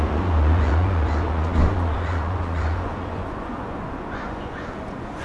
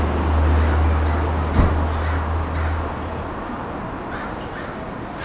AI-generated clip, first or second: first